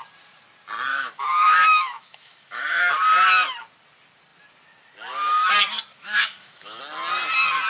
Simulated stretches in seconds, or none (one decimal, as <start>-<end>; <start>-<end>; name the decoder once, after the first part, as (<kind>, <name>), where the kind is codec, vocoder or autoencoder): 0.9-2.9 (autoencoder, DAC-VAE); 5.9-6.8